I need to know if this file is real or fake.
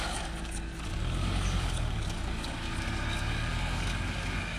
fake